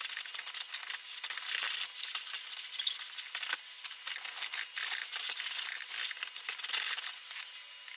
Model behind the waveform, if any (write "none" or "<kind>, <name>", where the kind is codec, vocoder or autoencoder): none